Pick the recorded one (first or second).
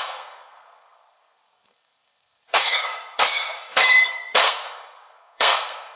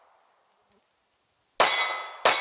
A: second